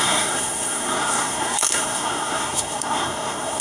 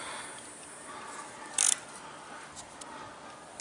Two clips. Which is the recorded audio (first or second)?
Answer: second